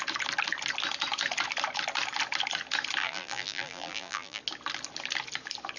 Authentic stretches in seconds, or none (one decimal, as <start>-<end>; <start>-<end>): 0.0-3.0; 4.4-5.8